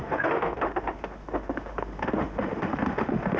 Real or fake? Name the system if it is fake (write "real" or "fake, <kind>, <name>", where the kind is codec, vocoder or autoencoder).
fake, autoencoder, DAC-VAE